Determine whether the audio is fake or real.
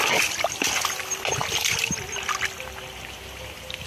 real